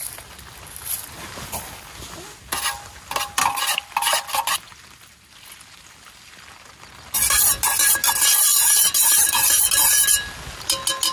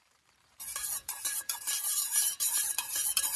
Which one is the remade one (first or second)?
second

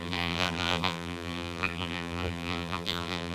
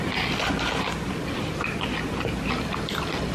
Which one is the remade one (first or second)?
first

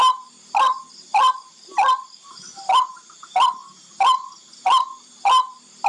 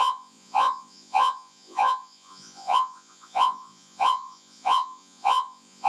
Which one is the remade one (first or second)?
second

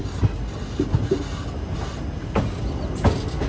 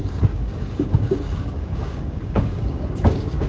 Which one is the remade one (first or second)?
second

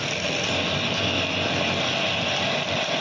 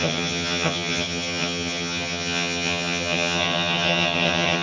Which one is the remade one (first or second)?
second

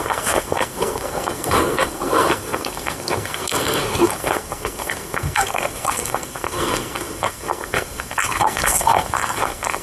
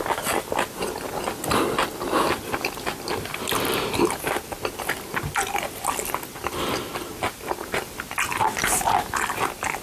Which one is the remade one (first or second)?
first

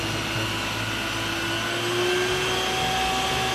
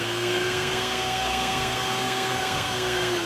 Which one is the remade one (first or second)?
second